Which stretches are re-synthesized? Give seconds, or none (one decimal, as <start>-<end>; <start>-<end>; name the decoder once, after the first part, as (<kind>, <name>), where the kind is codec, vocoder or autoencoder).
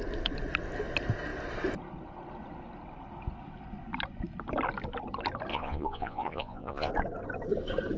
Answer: 5.5-6.9 (vocoder, Vocos)